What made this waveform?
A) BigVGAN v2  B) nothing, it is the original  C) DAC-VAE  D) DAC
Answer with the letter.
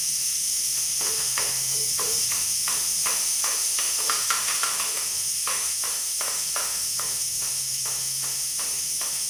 C